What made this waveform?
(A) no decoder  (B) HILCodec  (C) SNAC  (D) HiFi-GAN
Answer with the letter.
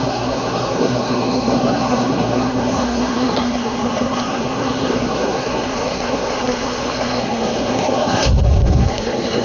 C